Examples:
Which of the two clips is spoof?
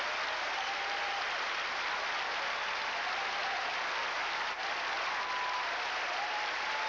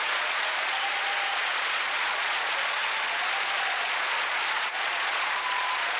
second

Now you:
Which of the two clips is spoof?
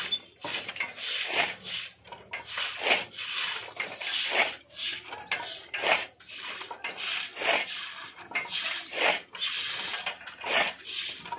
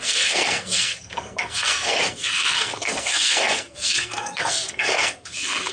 second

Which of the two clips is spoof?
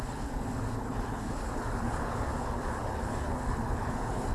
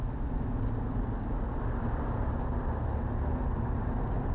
first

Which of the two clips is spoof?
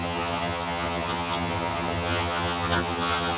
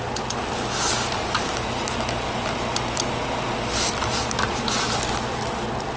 first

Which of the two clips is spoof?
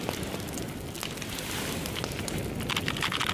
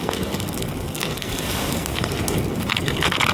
second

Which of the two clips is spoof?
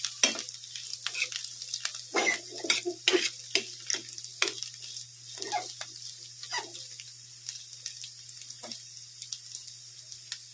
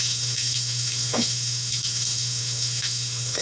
second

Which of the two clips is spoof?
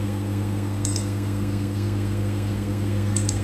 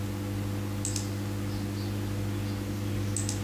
first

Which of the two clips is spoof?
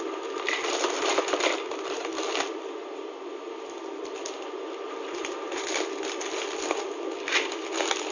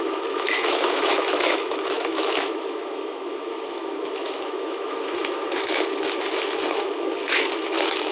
second